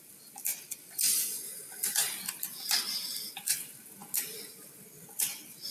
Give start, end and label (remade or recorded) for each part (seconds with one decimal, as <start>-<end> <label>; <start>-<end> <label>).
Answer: 0.0-4.0 remade; 4.0-4.5 recorded; 4.5-5.7 remade